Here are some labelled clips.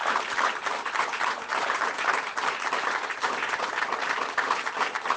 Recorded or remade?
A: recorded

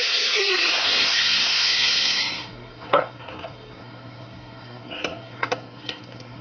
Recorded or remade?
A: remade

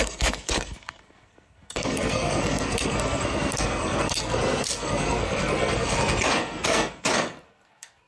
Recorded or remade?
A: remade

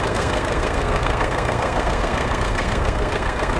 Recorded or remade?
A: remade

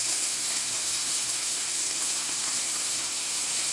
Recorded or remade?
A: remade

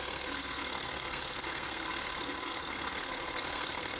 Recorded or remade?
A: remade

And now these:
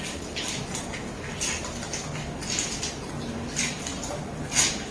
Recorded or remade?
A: recorded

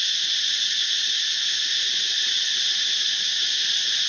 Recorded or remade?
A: recorded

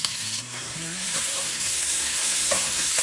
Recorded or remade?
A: remade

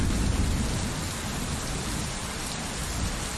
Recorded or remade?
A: recorded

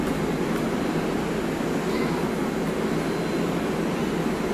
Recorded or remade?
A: recorded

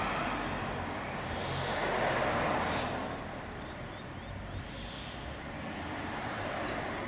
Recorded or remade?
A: recorded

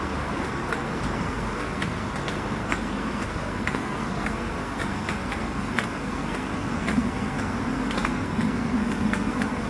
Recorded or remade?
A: remade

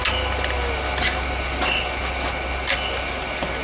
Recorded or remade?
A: recorded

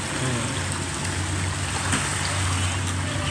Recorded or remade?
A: recorded